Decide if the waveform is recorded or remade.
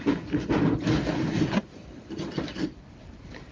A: recorded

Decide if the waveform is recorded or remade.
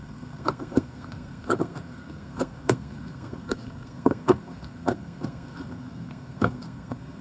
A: remade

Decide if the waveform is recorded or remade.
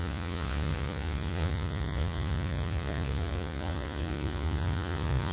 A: remade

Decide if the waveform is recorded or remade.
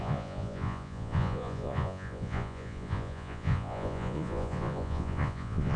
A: remade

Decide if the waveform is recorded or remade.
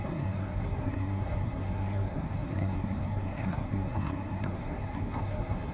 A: remade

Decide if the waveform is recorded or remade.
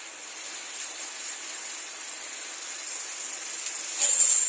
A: recorded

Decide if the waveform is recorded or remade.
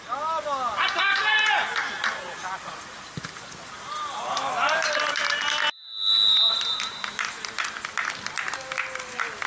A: recorded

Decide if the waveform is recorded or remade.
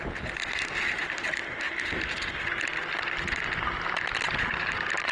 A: recorded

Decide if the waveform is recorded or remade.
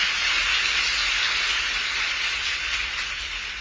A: recorded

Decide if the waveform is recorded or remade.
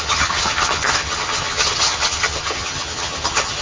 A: remade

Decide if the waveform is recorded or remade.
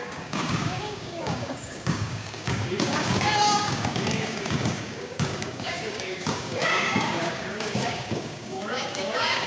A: remade